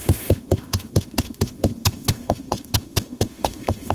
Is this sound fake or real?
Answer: fake